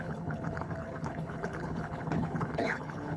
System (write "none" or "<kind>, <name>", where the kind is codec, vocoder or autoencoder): codec, HILCodec